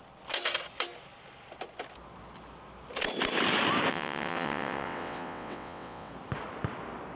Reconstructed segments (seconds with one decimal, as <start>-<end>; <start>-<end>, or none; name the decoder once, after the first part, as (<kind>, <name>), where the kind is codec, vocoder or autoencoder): 3.9-6.1 (vocoder, WaveNeXt)